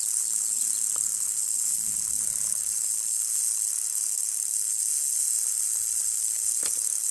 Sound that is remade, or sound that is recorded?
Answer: recorded